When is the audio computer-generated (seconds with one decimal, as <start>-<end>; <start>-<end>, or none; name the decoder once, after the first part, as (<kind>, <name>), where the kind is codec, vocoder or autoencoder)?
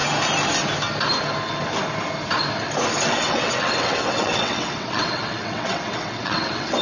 3.0-6.8 (vocoder, WaveNeXt)